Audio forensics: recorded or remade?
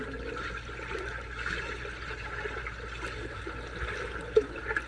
recorded